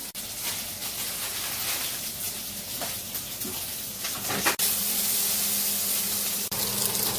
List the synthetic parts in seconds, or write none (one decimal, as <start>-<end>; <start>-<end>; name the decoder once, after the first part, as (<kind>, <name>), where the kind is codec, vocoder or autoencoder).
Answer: none